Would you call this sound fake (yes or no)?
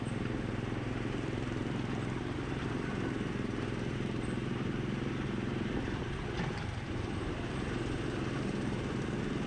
yes